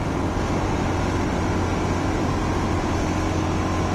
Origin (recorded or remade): recorded